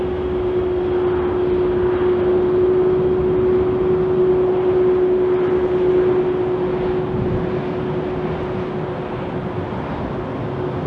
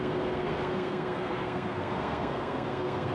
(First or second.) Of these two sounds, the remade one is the second